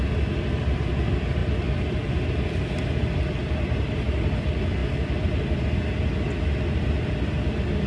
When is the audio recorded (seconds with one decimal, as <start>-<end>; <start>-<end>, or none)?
0.0-7.9